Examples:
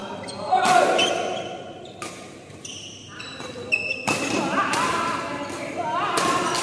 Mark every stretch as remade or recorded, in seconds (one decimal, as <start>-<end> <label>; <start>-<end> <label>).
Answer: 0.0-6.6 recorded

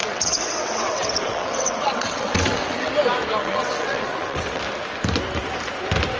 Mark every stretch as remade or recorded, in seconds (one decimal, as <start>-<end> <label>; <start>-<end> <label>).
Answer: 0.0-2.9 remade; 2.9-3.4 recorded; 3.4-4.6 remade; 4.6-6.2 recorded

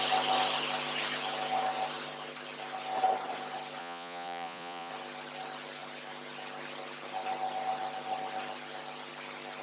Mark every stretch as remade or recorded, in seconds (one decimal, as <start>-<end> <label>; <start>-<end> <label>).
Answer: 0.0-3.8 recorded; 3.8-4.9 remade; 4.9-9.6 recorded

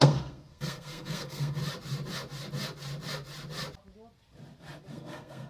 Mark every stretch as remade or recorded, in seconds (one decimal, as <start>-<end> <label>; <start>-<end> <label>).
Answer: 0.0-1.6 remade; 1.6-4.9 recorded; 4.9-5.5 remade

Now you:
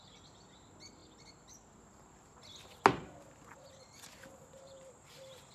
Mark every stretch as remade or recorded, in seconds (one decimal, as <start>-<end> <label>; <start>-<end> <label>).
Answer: 0.0-5.5 recorded